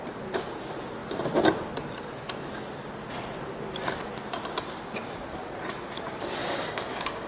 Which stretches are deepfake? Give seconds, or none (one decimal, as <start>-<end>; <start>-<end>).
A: 6.4-7.3